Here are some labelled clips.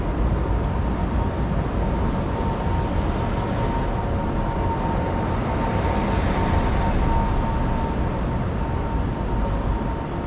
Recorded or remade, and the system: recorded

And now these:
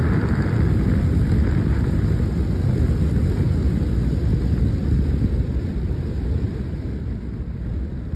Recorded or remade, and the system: recorded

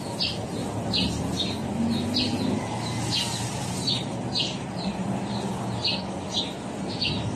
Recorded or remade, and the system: recorded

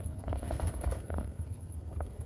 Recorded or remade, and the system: remade, codec, SNAC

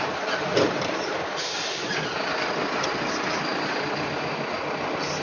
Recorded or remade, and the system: recorded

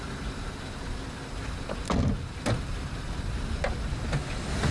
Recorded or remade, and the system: recorded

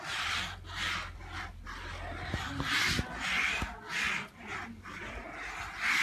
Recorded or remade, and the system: recorded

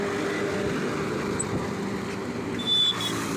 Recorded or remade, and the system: recorded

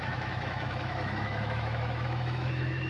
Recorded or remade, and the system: remade, autoencoder, DAC-VAE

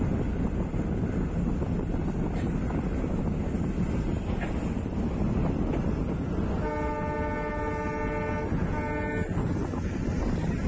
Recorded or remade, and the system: recorded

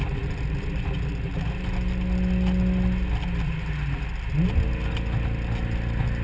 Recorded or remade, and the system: recorded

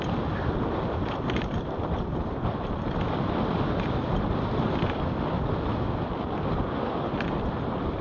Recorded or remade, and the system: recorded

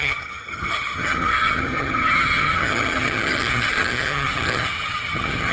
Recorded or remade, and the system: remade, vocoder, HiFi-GAN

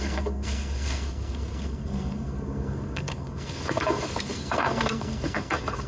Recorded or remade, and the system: remade, codec, SNAC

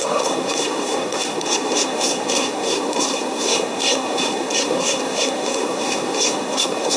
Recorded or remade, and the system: remade, codec, SNAC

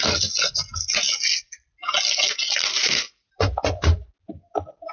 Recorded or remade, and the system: recorded